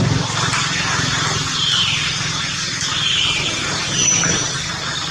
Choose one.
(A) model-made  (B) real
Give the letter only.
B